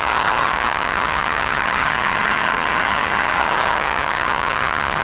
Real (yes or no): no